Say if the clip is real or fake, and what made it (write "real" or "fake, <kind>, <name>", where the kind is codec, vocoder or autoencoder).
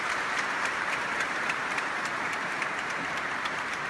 fake, vocoder, BigVGAN v2